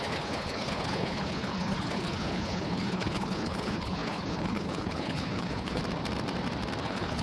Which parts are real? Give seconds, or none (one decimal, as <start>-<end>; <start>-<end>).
5.8-6.8